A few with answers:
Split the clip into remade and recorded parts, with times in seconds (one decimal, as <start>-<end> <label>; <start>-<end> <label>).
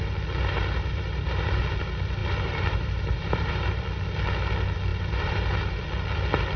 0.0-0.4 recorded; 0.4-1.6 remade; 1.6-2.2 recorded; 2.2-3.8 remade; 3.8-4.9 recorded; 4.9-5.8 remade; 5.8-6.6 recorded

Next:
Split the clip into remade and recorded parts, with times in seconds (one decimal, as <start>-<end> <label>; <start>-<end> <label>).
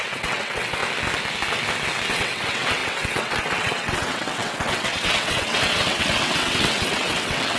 0.0-0.8 remade; 0.8-2.1 recorded; 2.1-7.6 remade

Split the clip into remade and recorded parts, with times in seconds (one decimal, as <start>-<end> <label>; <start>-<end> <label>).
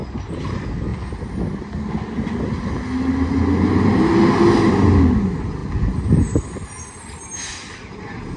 0.0-8.4 recorded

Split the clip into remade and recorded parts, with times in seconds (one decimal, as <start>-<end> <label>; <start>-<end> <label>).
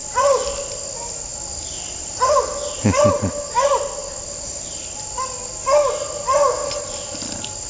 0.0-0.6 remade; 0.6-1.9 recorded; 1.9-3.3 remade; 3.3-4.0 recorded; 4.0-4.9 remade; 4.9-7.7 recorded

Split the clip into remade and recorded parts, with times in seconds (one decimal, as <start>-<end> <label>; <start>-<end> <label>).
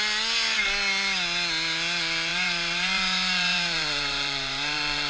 0.0-2.3 recorded; 2.3-5.1 remade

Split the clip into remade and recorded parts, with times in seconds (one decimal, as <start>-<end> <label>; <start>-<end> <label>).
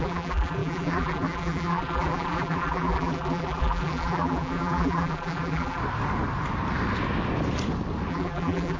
0.0-5.8 remade; 5.8-8.1 recorded; 8.1-8.8 remade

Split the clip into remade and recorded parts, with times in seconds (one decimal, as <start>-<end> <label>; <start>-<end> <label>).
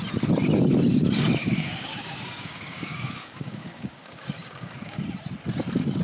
0.0-1.4 recorded; 1.4-5.0 remade; 5.0-6.0 recorded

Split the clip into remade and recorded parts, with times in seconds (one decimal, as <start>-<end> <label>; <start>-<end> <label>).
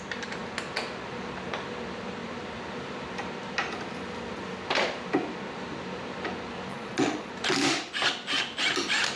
0.0-6.7 recorded; 6.7-7.3 remade; 7.3-9.2 recorded